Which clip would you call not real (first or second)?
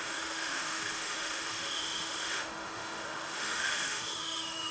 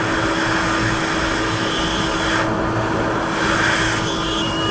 first